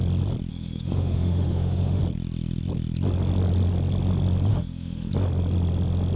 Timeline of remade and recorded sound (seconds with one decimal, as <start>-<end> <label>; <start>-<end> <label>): 0.0-0.5 recorded; 0.5-2.0 remade; 2.0-4.5 recorded; 4.5-5.1 remade; 5.1-6.2 recorded